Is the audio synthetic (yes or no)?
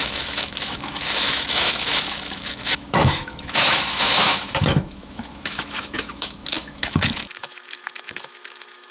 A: yes